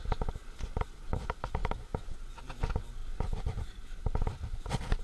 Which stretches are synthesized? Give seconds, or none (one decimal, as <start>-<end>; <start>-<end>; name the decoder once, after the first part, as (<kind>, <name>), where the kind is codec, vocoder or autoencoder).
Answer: 1.6-2.2 (autoencoder, DAC-VAE)